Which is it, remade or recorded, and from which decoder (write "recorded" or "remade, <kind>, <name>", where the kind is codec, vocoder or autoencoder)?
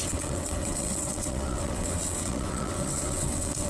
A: remade, vocoder, WaveNeXt